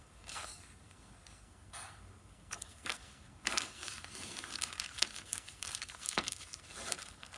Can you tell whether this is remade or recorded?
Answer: remade